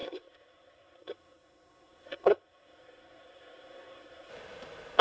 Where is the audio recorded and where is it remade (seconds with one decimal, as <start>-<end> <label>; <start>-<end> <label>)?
0.0-4.3 remade; 4.3-5.0 recorded